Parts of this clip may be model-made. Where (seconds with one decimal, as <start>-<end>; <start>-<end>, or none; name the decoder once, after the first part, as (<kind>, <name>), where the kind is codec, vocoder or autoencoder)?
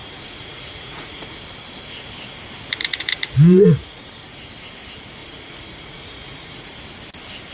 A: 0.0-1.4 (vocoder, Vocos); 2.8-4.0; 5.2-6.7